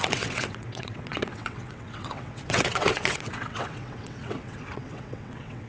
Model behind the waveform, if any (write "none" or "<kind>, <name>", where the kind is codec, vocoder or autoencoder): vocoder, WaveNeXt